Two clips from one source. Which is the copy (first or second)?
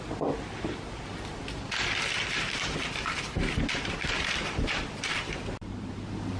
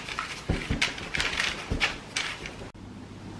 first